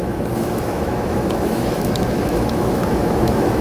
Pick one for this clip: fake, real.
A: fake